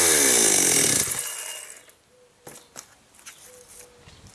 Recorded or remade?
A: recorded